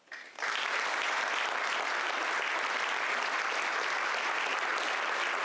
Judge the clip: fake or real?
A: real